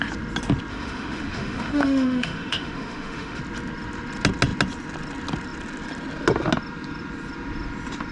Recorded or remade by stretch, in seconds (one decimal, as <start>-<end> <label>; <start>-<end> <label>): 0.0-0.7 recorded; 0.7-3.4 remade; 3.4-8.1 recorded